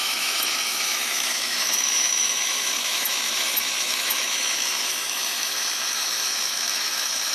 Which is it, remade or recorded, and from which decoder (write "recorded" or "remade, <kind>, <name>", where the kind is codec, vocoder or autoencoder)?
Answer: remade, autoencoder, DAC-VAE